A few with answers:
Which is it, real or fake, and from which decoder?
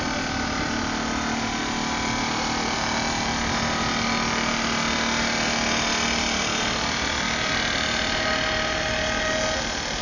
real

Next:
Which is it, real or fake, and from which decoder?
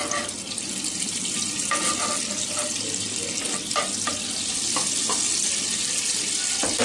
real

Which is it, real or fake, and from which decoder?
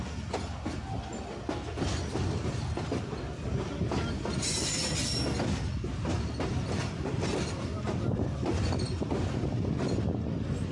real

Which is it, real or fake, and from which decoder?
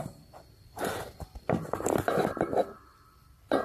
fake, vocoder, BigVGAN v2